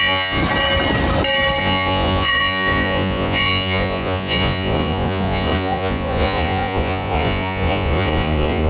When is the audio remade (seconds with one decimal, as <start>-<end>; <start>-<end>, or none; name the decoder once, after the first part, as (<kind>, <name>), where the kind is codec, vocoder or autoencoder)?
0.0-0.4 (vocoder, Vocos); 1.6-8.7

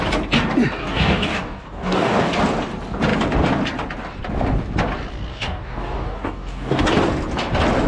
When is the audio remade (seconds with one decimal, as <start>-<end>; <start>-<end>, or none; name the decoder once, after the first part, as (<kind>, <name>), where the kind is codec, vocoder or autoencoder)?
0.8-2.3 (codec, DAC); 5.3-6.8